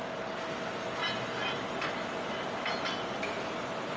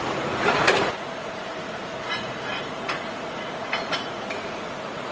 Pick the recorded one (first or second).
first